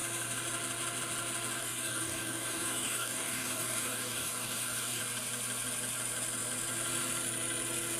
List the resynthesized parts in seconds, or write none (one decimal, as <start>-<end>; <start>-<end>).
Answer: 1.6-5.0